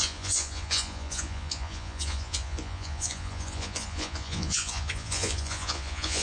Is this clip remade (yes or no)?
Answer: yes